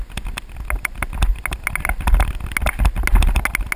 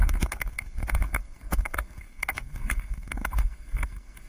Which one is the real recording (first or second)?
first